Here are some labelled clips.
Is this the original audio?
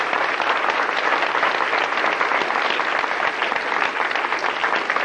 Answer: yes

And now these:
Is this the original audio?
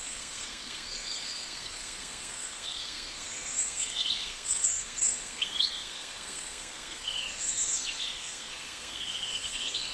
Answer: no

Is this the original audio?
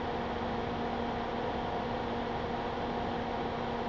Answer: yes